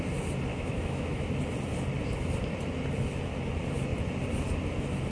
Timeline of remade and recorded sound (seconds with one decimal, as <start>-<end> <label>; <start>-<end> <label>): 0.0-0.5 recorded; 0.5-1.4 remade; 1.4-5.1 recorded